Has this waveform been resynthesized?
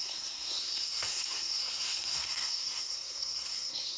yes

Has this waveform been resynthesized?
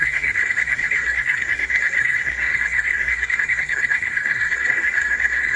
yes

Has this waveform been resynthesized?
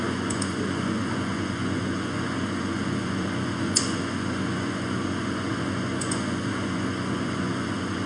yes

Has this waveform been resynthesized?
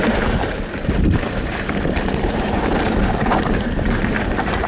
yes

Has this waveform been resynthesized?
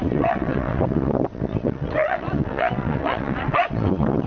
yes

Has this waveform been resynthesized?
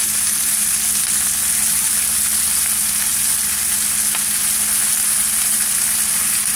no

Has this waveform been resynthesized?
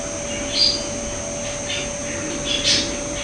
no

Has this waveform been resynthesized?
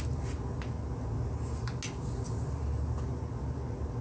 no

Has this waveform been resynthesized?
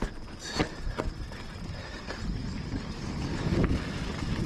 no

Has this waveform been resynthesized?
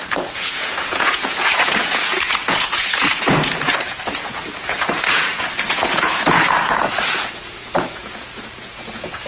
yes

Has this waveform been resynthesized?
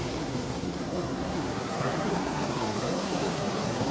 yes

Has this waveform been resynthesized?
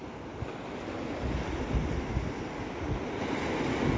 no